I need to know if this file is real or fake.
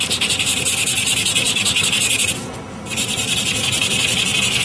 fake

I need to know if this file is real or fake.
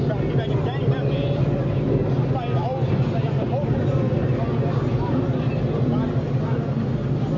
real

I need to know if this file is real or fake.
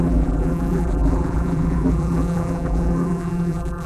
fake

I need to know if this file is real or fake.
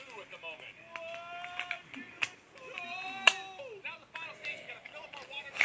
real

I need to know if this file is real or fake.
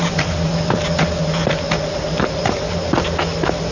real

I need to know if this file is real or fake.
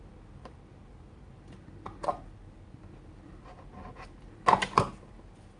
real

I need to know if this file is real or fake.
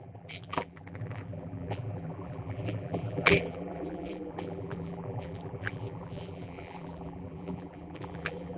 fake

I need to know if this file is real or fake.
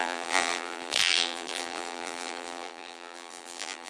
fake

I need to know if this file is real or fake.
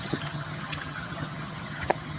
fake